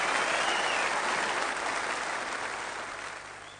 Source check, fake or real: real